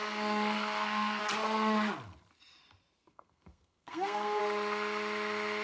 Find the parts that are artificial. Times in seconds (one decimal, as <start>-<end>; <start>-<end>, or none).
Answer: 0.0-1.2; 3.0-4.4